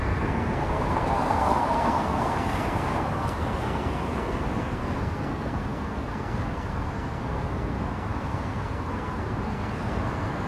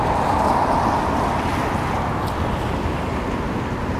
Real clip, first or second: second